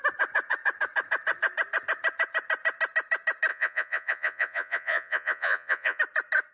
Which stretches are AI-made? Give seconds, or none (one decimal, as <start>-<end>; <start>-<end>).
3.5-6.0